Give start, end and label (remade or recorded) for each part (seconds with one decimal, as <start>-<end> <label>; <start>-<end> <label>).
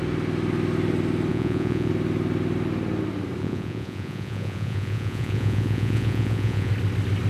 0.0-1.3 recorded; 1.3-1.9 remade; 1.9-3.4 recorded; 3.4-6.7 remade; 6.7-7.3 recorded